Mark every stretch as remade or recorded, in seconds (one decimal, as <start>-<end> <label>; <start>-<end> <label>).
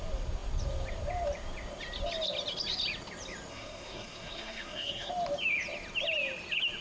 0.0-3.5 recorded; 3.5-5.1 remade; 5.1-6.8 recorded